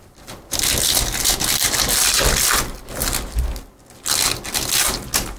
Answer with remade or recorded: recorded